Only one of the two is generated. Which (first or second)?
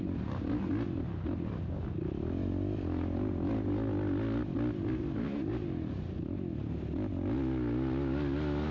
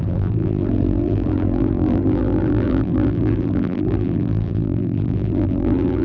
second